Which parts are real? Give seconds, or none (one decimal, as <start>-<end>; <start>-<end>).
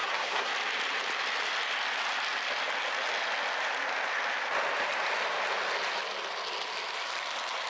0.5-7.7